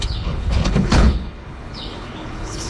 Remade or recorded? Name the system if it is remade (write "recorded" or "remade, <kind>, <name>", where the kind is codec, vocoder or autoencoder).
remade, codec, HILCodec